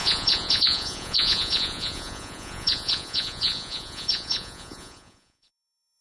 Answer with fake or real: fake